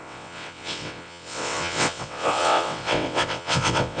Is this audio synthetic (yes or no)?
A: yes